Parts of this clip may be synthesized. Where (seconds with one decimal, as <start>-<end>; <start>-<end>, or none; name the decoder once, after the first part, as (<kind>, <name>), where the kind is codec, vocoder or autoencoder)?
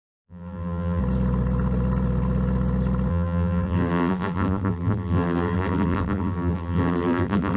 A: 0.0-1.0 (vocoder, BigVGAN v2); 3.1-7.6